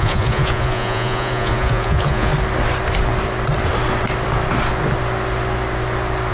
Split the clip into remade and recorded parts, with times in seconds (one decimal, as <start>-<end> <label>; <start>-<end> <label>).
0.0-2.3 remade; 2.3-6.3 recorded